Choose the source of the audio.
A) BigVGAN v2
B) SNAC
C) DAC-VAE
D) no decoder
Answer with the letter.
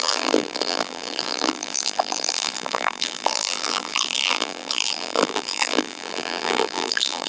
A